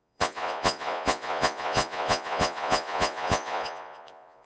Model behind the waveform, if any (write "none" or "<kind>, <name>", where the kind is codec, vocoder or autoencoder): vocoder, Vocos